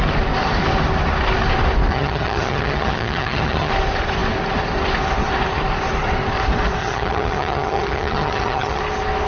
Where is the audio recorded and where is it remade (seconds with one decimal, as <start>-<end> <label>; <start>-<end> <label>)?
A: 0.0-1.9 recorded; 1.9-3.7 remade; 3.7-6.8 recorded; 6.8-8.8 remade; 8.8-9.3 recorded